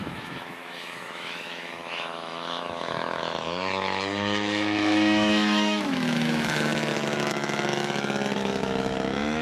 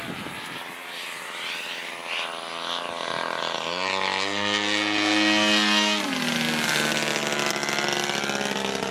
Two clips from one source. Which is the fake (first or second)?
first